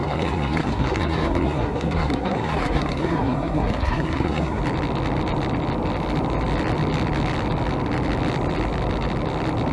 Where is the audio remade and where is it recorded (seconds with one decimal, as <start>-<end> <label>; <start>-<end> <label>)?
0.0-4.6 remade; 4.6-9.7 recorded